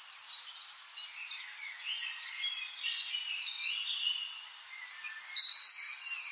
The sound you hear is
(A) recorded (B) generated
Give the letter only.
A